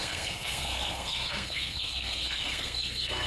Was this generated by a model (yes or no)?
yes